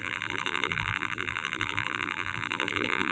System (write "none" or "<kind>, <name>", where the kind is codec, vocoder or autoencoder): vocoder, BigVGAN v2